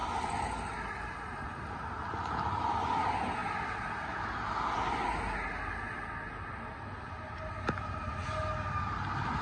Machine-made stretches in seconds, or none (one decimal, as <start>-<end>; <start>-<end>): none